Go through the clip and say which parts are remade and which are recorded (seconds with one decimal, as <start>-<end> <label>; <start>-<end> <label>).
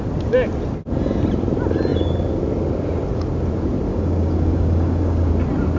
0.0-3.9 recorded; 3.9-5.3 remade; 5.3-5.8 recorded